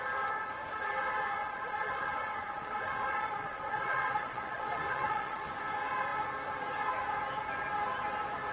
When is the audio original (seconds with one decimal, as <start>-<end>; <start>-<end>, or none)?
0.0-1.4; 5.5-8.5